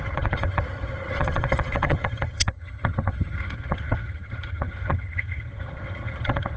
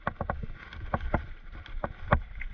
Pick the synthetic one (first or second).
first